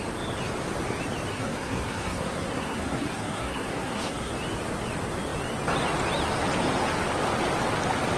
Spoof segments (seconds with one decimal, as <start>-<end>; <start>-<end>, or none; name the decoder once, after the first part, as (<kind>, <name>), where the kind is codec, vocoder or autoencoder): 1.3-4.3 (codec, SNAC)